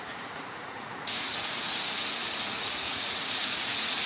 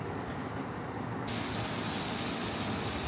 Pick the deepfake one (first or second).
first